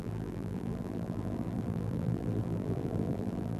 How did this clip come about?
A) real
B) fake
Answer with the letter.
B